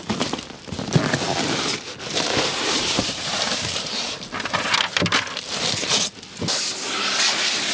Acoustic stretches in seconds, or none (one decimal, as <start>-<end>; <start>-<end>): 0.0-2.1; 4.6-7.7

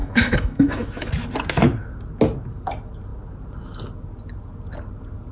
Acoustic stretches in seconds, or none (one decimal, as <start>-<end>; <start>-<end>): 1.1-5.3

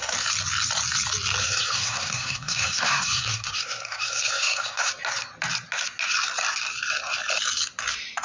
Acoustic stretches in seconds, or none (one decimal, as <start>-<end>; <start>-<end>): 0.0-1.4; 4.9-8.2

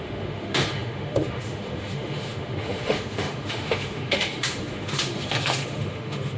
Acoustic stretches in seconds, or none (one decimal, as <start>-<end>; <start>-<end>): none

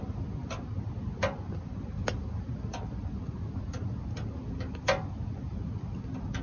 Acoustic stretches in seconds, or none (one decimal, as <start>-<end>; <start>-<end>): 0.0-6.4

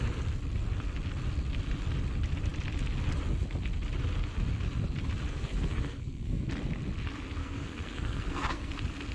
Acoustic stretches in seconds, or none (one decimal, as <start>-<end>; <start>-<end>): 0.0-5.3; 6.5-7.4; 8.7-9.1

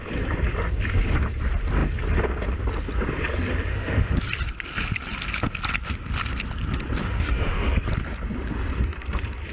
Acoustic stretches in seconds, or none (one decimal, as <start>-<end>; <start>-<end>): 0.0-3.7; 4.2-7.0; 7.7-9.5